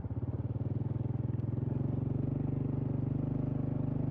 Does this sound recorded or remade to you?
recorded